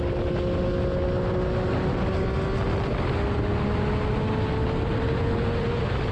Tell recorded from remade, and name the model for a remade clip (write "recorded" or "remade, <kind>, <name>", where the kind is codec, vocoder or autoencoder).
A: recorded